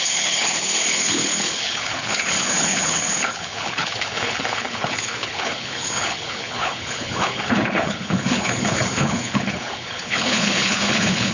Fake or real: fake